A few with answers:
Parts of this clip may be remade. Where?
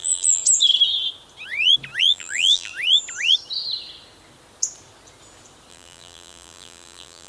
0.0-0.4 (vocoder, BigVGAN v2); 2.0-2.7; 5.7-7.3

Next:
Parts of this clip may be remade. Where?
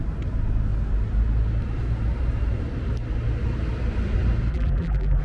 4.5-5.2 (vocoder, BigVGAN v2)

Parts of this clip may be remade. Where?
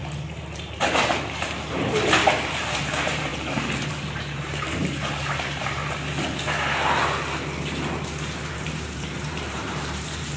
0.8-5.8 (vocoder, BigVGAN v2); 8.5-10.4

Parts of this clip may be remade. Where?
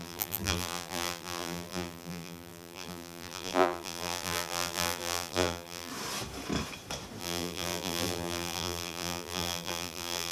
0.0-5.9 (vocoder, BigVGAN v2); 7.2-10.3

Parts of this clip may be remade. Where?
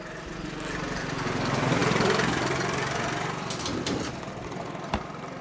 1.8-5.0 (vocoder, BigVGAN v2)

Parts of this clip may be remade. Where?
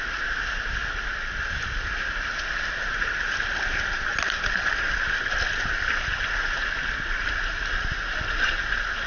none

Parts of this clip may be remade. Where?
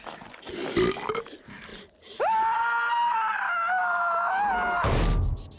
1.7-3.3 (vocoder, BigVGAN v2); 3.8-4.3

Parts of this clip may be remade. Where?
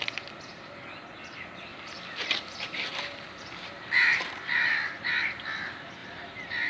1.7-2.4 (vocoder, BigVGAN v2); 6.0-6.7